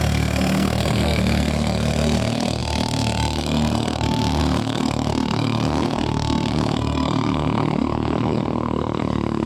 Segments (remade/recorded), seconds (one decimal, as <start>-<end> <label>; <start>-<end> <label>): 0.0-9.5 remade